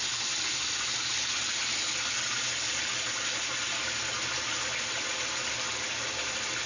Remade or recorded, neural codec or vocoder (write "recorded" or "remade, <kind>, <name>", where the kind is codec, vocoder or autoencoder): recorded